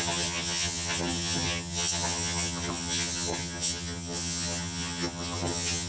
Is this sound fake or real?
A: fake